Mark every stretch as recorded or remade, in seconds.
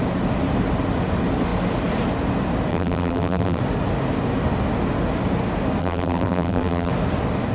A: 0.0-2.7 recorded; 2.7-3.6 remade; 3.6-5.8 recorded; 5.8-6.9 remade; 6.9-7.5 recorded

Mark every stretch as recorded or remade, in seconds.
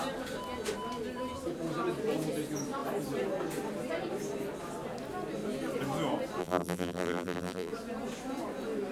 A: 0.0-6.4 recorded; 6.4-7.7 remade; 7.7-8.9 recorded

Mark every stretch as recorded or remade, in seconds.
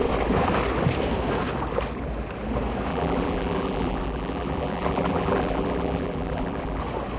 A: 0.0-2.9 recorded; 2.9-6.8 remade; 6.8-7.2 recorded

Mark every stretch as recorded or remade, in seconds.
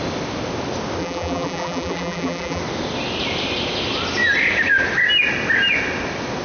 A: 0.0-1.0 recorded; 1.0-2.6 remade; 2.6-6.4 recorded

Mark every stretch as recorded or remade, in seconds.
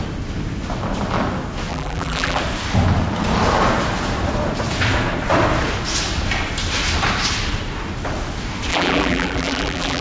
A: 0.0-1.7 recorded; 1.7-2.4 remade; 2.4-8.7 recorded; 8.7-10.0 remade